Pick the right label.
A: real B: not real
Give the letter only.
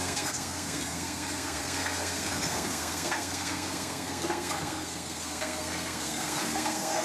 B